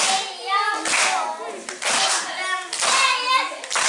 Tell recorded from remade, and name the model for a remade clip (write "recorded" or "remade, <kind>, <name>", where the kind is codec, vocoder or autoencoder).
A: recorded